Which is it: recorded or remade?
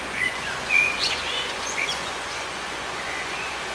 remade